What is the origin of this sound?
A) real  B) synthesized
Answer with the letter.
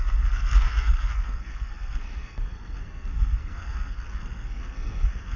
B